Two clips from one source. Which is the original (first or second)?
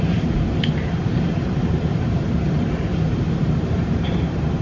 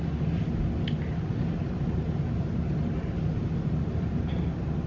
second